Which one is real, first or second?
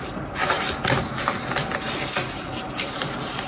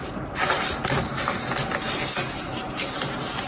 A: second